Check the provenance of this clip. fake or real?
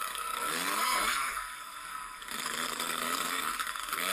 fake